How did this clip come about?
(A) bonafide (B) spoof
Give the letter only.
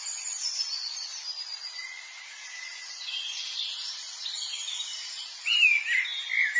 A